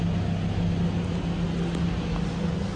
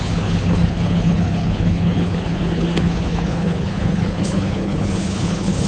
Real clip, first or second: first